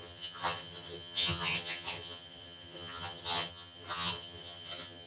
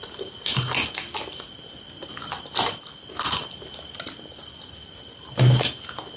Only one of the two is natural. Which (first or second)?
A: second